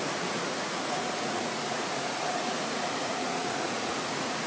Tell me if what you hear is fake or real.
fake